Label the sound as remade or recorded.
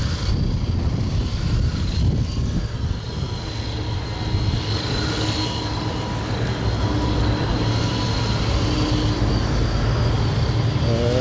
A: recorded